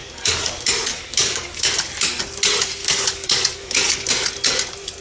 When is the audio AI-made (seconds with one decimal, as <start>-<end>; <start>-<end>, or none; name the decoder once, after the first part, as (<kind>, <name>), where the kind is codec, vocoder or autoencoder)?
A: 0.0-0.5 (codec, DAC); 0.9-1.7; 2.8-4.1